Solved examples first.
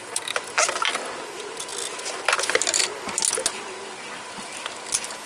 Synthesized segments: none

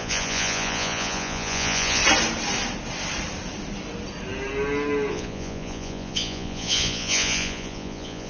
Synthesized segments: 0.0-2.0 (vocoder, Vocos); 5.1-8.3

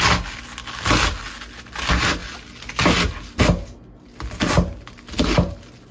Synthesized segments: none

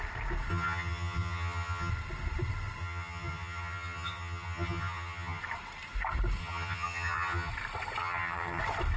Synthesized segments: 0.5-1.9 (vocoder, HiFi-GAN); 2.8-5.4; 6.4-7.5; 8.0-8.6

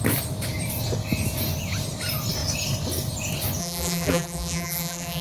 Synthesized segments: 3.6-5.2 (vocoder, BigVGAN v2)

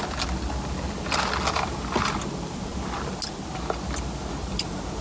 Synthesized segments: none

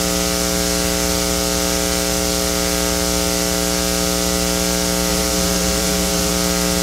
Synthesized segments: 5.1-6.3 (vocoder, BigVGAN v2)